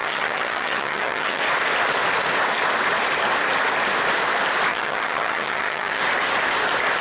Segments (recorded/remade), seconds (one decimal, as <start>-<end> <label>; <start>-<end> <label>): 0.0-1.4 remade; 1.4-4.7 recorded; 4.7-6.0 remade; 6.0-7.0 recorded